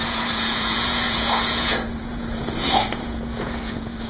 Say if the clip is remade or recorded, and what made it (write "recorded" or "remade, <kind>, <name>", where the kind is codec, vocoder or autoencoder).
remade, vocoder, Vocos